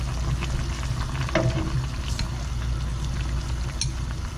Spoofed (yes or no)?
no